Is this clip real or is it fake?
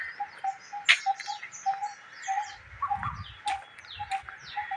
real